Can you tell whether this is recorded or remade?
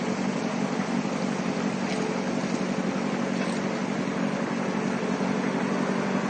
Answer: recorded